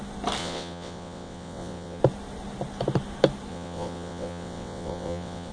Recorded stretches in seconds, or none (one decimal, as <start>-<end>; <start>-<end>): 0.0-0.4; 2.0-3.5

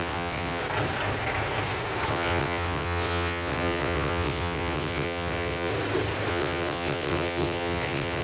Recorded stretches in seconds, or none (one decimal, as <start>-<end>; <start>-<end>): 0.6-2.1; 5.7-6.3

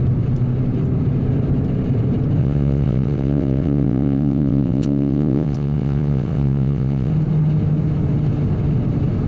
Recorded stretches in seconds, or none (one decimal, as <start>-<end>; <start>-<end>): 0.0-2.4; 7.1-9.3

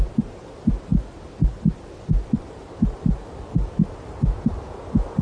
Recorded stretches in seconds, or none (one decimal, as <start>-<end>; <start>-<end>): 0.0-5.2

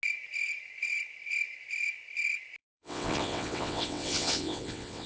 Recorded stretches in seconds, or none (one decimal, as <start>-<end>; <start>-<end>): 0.0-2.6

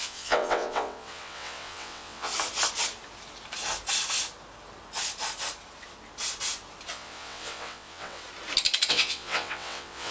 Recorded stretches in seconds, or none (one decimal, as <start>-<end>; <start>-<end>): 2.3-6.9; 8.2-8.9